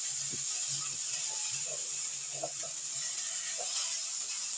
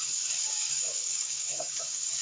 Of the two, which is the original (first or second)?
first